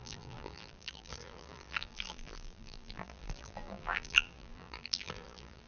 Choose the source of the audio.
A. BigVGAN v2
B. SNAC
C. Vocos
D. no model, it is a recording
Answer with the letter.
A